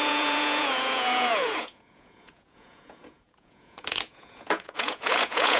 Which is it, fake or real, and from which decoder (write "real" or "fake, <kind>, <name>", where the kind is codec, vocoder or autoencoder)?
fake, vocoder, Vocos